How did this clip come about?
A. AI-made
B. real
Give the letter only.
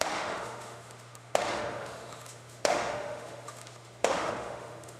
A